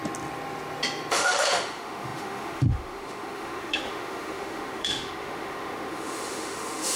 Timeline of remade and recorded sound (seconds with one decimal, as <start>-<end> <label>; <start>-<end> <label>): 0.0-1.1 recorded; 1.1-7.0 remade